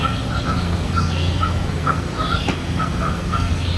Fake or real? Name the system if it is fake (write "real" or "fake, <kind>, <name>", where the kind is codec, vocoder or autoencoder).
fake, codec, SNAC